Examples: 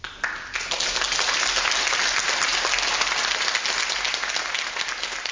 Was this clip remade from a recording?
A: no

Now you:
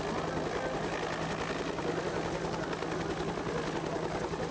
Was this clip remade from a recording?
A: no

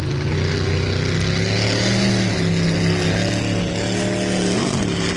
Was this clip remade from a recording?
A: no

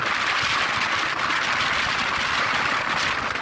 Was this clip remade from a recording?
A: no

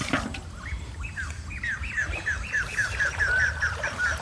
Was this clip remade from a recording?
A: yes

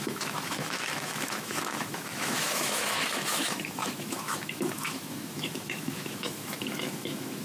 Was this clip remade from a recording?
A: yes